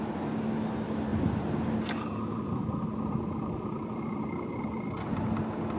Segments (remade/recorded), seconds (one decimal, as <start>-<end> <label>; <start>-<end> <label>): 0.0-1.1 recorded; 1.1-4.6 remade; 4.6-5.8 recorded